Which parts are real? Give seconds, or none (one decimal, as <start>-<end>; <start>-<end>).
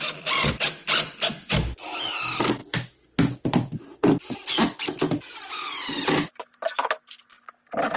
0.0-2.6; 4.5-5.3; 6.9-8.0